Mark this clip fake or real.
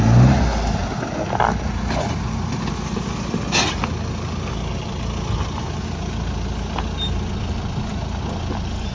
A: real